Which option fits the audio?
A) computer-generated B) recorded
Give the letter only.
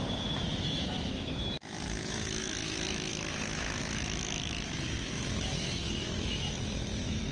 A